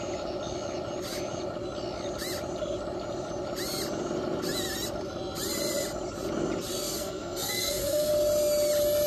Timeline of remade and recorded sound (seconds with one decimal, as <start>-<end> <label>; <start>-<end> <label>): 0.0-6.7 recorded; 6.7-8.1 remade; 8.1-9.1 recorded